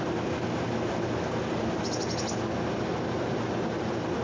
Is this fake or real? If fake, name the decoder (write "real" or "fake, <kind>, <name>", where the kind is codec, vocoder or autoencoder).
real